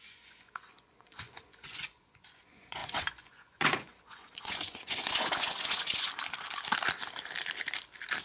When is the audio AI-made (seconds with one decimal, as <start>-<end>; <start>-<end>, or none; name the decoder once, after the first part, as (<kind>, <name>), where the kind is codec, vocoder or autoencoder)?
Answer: 0.0-6.1 (vocoder, Vocos)